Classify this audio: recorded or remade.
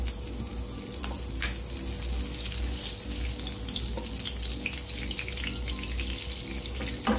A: recorded